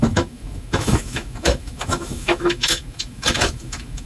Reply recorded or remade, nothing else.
remade